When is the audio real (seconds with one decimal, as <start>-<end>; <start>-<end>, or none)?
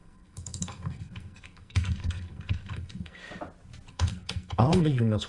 3.2-3.9